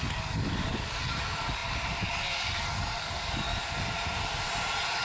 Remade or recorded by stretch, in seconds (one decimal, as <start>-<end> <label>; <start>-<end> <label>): 0.0-3.5 remade; 3.5-5.0 recorded